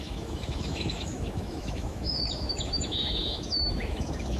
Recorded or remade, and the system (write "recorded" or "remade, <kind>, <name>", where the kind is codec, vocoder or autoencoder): remade, autoencoder, DAC-VAE